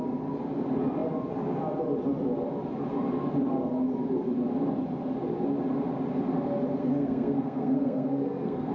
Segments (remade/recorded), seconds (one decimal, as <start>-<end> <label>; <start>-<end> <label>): 0.0-6.8 recorded; 6.8-8.7 remade